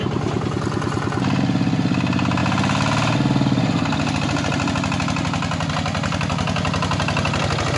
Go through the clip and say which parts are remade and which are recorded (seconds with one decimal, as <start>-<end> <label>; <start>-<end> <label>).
0.0-7.8 recorded